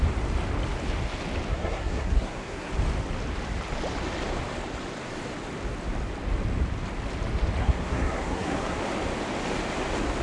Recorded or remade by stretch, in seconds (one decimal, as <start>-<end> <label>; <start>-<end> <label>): 0.0-1.5 recorded; 1.5-2.7 remade; 2.7-7.6 recorded; 7.6-8.8 remade; 8.8-10.2 recorded